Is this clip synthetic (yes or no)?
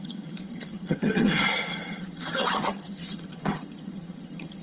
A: yes